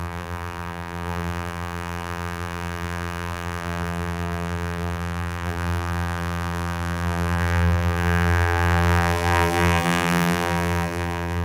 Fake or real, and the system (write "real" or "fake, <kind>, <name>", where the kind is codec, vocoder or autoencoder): fake, vocoder, BigVGAN v2